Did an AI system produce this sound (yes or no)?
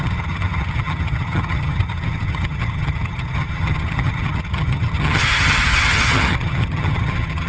yes